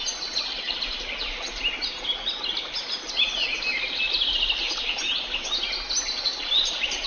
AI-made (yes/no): no